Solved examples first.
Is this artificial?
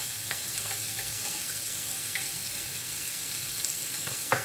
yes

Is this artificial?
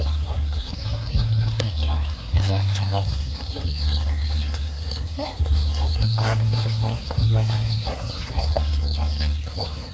yes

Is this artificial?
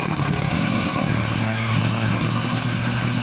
yes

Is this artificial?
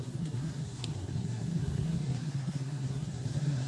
yes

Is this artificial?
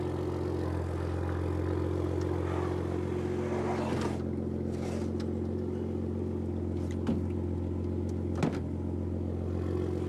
no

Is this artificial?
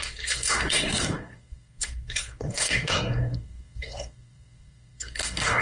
yes